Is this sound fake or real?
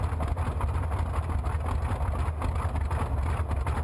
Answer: real